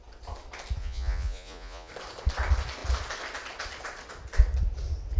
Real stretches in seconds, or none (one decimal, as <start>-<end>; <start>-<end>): 0.0-0.8; 1.9-5.2